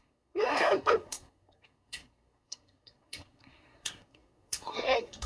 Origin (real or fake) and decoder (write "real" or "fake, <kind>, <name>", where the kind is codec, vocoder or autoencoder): fake, codec, SNAC